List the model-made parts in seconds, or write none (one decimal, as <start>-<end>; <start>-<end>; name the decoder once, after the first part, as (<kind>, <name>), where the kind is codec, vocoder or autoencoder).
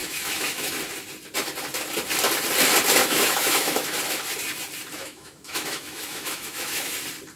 0.0-0.8 (autoencoder, DAC-VAE); 3.0-4.0; 4.9-6.9